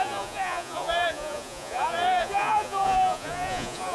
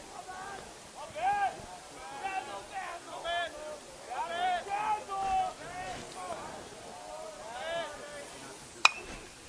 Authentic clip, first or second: second